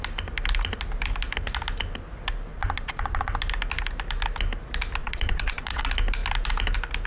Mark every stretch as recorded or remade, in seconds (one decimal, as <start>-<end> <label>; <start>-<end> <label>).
0.0-2.5 recorded; 2.5-3.3 remade; 3.3-5.0 recorded; 5.0-5.8 remade; 5.8-7.1 recorded